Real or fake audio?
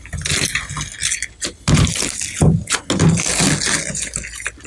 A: real